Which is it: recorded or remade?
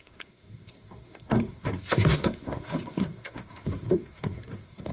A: remade